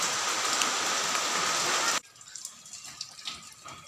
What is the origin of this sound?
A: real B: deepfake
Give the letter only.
A